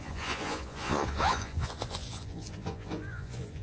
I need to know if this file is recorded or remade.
remade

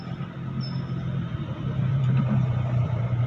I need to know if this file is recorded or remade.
remade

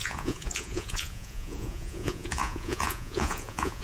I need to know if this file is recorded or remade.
remade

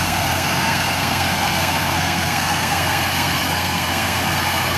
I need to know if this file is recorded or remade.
remade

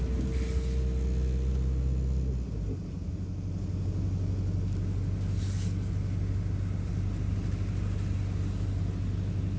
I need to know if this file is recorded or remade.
recorded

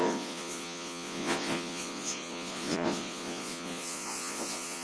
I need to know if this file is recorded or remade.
remade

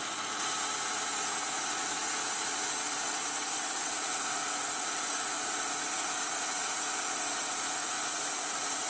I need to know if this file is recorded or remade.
remade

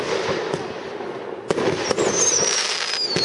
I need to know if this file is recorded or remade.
recorded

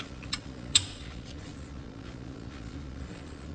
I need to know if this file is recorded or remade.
remade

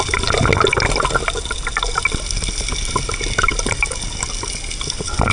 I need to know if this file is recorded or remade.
recorded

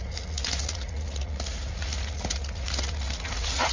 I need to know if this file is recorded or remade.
remade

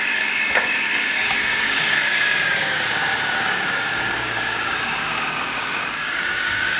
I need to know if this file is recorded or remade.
remade